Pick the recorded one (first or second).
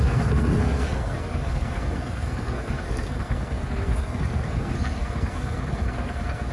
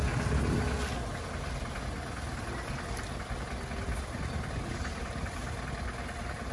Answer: second